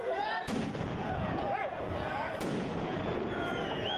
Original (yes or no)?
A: no